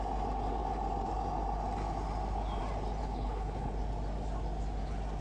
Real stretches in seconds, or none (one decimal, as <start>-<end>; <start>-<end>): 0.0-3.0; 3.7-5.2